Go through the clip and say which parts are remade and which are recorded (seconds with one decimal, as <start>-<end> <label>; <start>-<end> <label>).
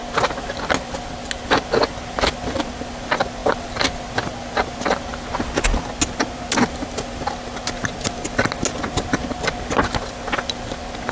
0.0-11.1 recorded